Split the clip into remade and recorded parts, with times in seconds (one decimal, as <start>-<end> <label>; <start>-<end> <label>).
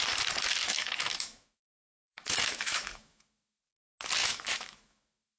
0.0-0.6 recorded; 0.6-3.6 remade; 3.6-4.2 recorded; 4.2-5.4 remade